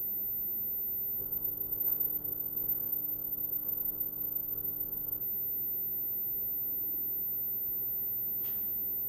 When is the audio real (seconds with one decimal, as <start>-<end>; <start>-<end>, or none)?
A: 0.0-1.2; 5.2-9.1